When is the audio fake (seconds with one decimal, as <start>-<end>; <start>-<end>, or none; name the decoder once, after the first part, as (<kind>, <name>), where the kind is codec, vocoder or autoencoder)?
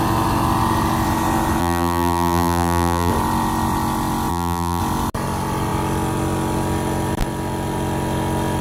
1.6-3.1 (vocoder, BigVGAN v2); 4.3-4.8